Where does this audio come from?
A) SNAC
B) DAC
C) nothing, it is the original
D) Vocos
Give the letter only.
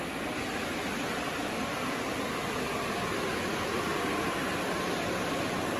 C